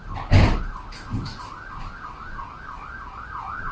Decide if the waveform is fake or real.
real